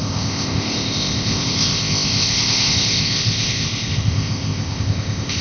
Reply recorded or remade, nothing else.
remade